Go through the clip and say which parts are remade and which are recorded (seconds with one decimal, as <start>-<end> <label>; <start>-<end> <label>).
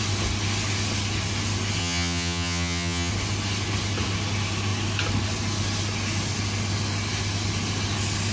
0.0-1.8 recorded; 1.8-3.1 remade; 3.1-8.3 recorded